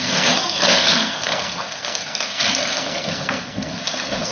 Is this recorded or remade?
remade